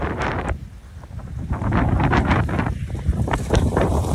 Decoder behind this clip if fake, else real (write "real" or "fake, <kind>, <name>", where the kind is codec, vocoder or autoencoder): fake, vocoder, BigVGAN v2